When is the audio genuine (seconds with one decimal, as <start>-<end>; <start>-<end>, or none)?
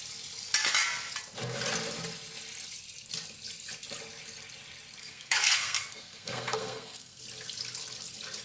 0.0-5.0; 7.2-8.4